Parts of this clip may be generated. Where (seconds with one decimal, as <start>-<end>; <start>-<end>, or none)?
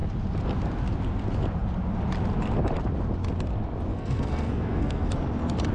3.9-5.1